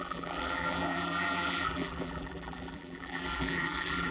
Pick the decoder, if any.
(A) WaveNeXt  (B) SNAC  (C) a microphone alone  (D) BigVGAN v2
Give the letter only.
D